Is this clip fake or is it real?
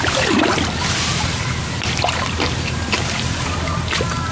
real